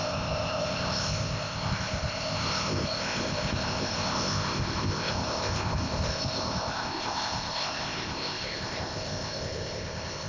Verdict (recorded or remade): remade